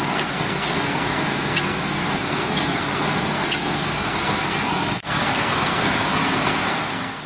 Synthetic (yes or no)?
yes